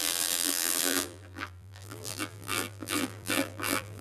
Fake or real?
fake